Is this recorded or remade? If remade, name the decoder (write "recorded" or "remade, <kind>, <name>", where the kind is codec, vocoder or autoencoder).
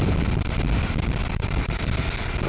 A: recorded